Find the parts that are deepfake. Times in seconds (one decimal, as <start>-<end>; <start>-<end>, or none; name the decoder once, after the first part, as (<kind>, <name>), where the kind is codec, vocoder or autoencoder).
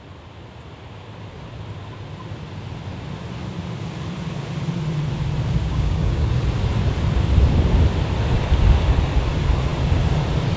5.6-6.3 (codec, DAC)